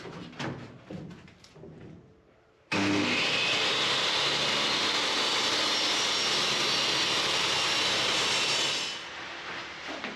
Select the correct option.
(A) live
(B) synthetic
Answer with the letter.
A